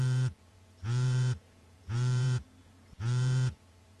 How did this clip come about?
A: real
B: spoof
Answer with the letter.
B